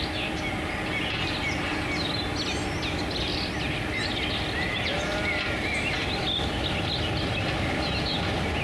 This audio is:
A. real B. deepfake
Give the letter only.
A